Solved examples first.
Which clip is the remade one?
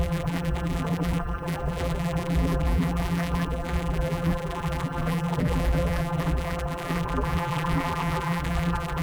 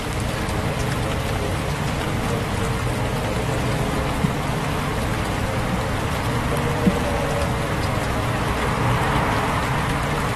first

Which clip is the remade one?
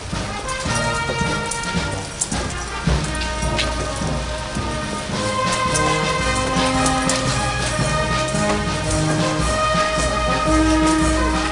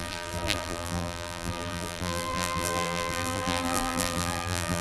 second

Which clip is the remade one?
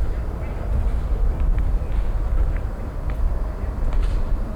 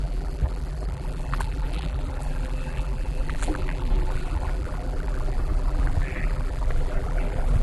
second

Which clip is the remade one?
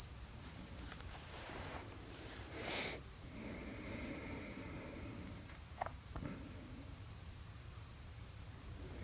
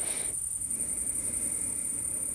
first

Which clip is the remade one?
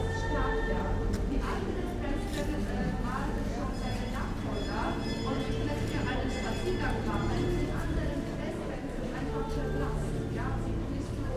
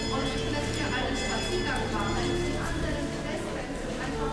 first